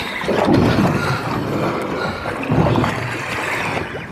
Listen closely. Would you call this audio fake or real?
real